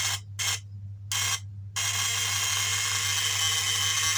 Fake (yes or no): no